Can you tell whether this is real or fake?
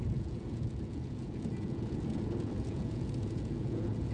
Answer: fake